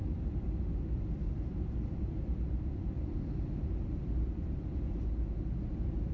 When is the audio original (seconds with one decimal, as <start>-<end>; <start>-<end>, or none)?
none